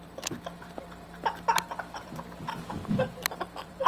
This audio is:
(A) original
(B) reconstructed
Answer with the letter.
B